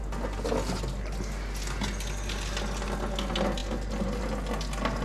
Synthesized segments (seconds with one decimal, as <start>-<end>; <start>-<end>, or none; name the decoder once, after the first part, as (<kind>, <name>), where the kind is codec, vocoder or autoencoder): none